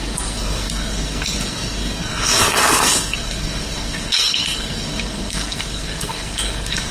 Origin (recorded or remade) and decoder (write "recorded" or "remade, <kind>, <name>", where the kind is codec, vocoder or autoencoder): remade, codec, SNAC